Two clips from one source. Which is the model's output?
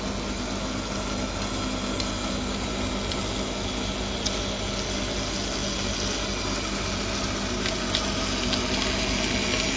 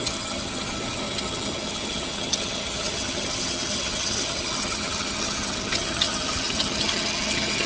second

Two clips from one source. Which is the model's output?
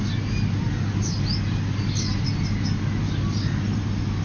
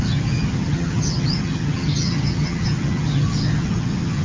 second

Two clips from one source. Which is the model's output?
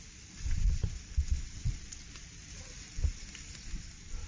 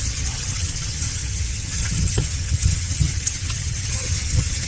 second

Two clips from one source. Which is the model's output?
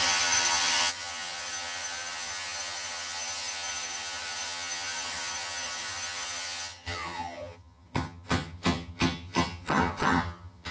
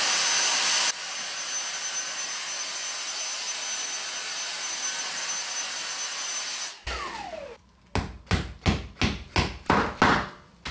first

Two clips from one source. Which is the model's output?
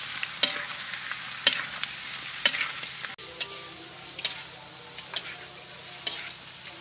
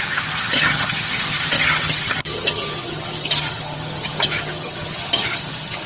second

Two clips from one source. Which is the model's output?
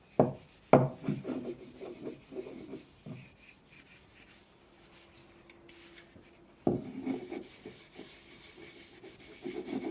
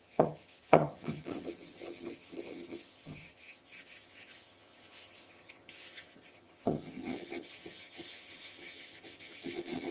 second